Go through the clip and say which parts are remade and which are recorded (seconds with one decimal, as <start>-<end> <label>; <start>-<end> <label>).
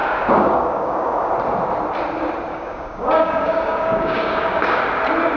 0.0-1.3 remade; 1.3-2.5 recorded; 2.5-4.8 remade; 4.8-5.4 recorded